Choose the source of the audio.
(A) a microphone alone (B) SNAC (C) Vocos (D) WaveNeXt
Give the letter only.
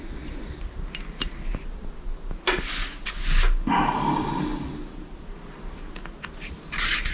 A